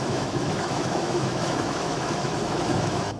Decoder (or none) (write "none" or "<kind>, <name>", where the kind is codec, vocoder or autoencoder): autoencoder, DAC-VAE